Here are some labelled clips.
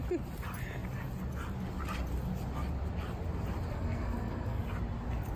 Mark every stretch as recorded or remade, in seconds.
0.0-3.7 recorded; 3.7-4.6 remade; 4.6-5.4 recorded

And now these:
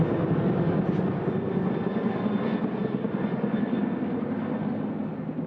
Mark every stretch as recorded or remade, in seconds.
0.0-5.5 recorded

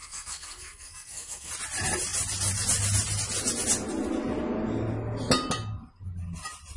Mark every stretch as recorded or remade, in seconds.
0.0-1.5 remade; 1.5-6.8 recorded

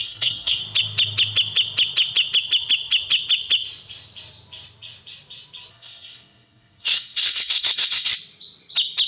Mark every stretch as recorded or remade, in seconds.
0.0-0.6 remade; 0.6-5.7 recorded; 5.7-8.1 remade; 8.1-9.1 recorded

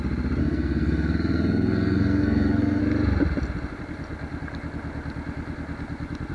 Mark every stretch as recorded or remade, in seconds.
0.0-0.4 recorded; 0.4-2.8 remade; 2.8-6.3 recorded

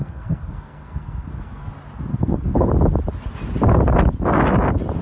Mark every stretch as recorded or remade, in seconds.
0.0-1.7 remade; 1.7-2.1 recorded; 2.1-2.7 remade; 2.7-5.0 recorded